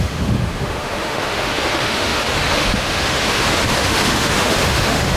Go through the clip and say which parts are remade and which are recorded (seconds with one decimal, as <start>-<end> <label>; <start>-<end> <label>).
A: 0.0-5.2 remade